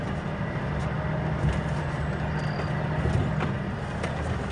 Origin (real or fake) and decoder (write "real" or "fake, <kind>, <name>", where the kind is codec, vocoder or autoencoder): real